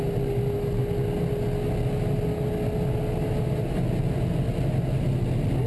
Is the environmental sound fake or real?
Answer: real